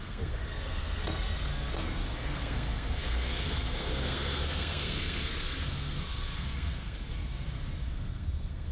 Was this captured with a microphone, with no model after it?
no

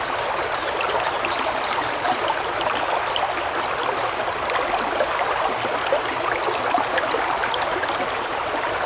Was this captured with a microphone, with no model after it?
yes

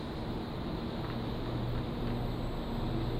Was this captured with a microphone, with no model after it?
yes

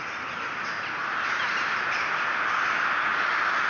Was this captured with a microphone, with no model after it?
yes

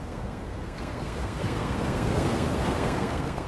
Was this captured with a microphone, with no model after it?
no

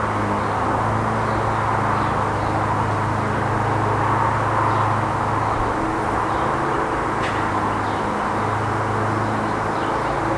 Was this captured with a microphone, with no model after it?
yes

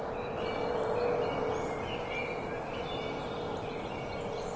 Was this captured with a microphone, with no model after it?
yes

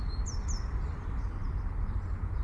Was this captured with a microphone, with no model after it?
yes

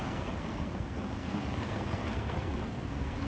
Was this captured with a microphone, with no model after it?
no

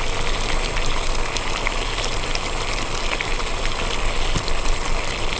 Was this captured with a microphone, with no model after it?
yes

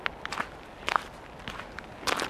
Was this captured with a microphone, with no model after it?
yes